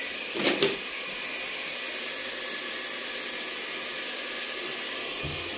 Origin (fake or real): real